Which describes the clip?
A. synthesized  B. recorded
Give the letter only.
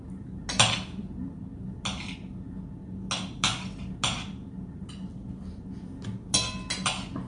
B